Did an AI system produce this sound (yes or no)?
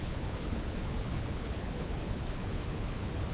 yes